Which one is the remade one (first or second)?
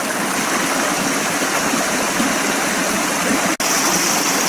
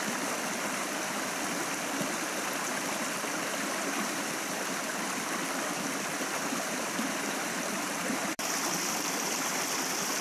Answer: second